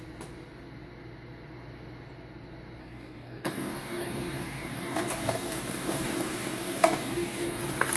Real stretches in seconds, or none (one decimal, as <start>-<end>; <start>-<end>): 0.0-2.8; 7.6-8.0